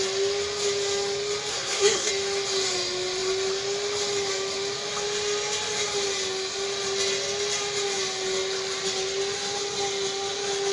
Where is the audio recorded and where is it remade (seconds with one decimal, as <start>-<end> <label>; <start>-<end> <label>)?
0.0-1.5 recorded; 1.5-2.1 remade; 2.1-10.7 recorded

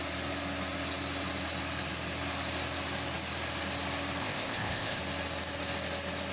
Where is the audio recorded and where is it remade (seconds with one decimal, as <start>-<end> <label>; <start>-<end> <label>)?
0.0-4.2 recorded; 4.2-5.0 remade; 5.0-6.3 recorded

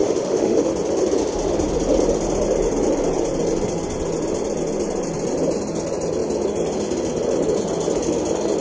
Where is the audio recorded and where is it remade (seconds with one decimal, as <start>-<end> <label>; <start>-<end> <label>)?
0.0-0.7 remade; 0.7-8.6 recorded

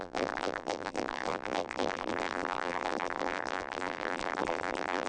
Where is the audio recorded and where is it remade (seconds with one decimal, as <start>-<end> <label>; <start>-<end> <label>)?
0.0-5.1 remade

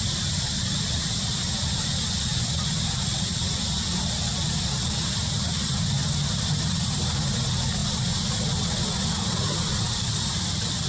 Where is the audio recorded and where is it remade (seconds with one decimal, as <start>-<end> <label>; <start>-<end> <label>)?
0.0-2.3 remade; 2.3-6.3 recorded; 6.3-7.8 remade; 7.8-9.7 recorded; 9.7-10.9 remade

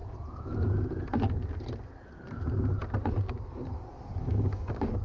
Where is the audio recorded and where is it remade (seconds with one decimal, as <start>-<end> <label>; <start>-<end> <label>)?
0.0-4.2 recorded; 4.2-5.0 remade

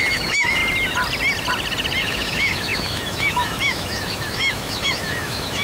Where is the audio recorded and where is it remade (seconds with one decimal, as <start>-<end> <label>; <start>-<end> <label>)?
0.0-0.6 remade; 0.6-2.0 recorded; 2.0-5.6 remade